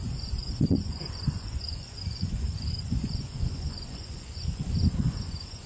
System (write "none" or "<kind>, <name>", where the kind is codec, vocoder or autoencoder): vocoder, Vocos